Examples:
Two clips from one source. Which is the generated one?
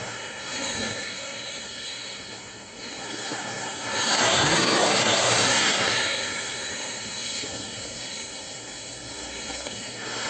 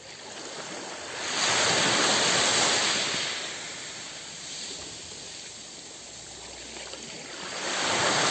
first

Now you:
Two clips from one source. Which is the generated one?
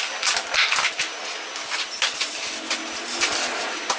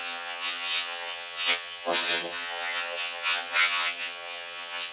second